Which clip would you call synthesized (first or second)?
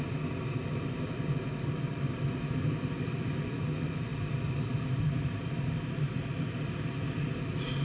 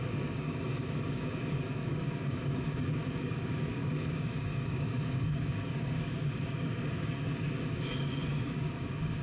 second